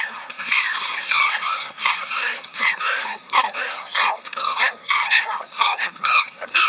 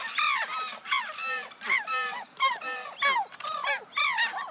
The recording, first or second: second